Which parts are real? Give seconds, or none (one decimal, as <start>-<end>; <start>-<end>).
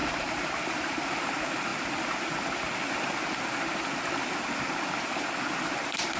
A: 1.1-6.2